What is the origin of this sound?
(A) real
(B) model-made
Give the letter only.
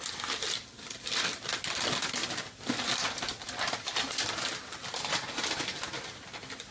A